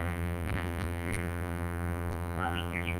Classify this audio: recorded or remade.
remade